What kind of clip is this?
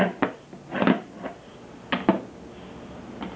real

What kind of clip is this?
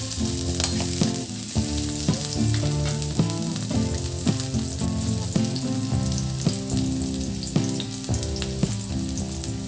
real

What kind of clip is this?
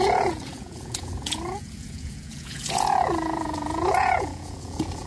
fake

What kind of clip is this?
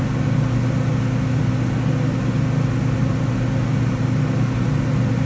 real